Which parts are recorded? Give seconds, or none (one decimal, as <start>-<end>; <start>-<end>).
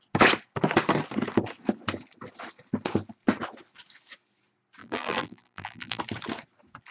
0.0-4.8; 6.0-6.9